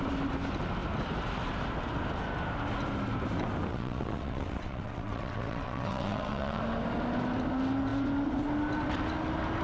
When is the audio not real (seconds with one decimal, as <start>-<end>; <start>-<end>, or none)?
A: 3.7-6.6